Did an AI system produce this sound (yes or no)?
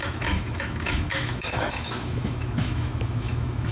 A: yes